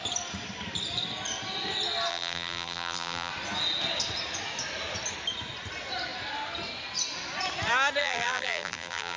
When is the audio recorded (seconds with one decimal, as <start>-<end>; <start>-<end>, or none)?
0.0-2.1; 3.3-8.0